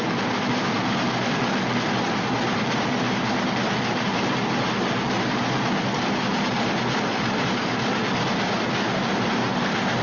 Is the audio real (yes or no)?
yes